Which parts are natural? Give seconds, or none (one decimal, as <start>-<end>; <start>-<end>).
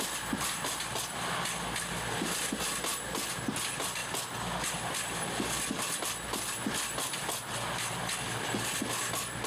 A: 0.0-9.5